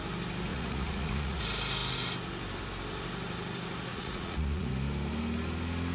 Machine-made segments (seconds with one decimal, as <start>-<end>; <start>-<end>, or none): 0.5-1.4; 3.9-4.7